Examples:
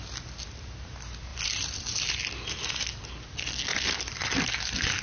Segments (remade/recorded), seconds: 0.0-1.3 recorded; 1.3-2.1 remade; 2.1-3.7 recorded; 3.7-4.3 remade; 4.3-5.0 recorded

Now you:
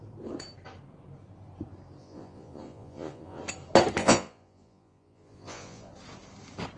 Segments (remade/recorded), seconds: 0.0-2.0 recorded; 2.0-3.4 remade; 3.4-4.0 recorded; 4.0-5.9 remade; 5.9-6.8 recorded